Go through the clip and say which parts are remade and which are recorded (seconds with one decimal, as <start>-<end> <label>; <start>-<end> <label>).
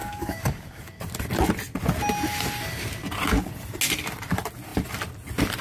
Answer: 0.0-1.0 remade; 1.0-5.6 recorded